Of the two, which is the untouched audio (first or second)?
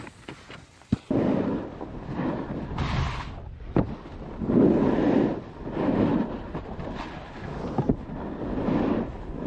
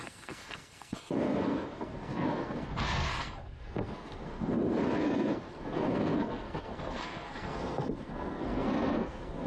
first